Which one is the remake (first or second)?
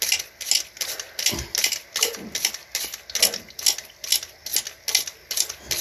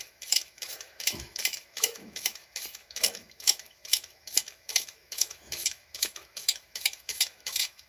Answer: second